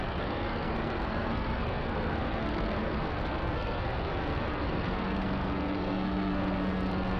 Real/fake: fake